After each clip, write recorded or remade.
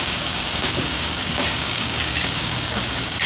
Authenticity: remade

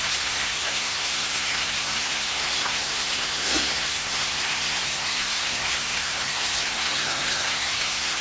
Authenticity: remade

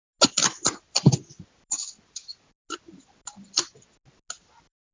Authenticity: recorded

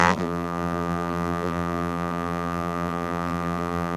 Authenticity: remade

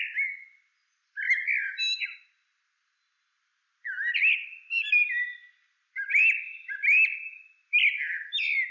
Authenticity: recorded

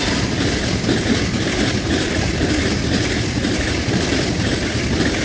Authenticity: remade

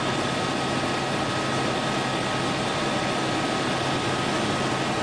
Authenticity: recorded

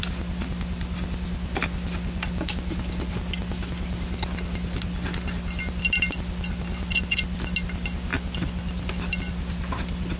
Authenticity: recorded